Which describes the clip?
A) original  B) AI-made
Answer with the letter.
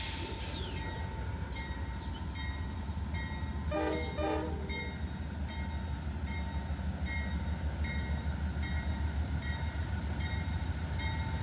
A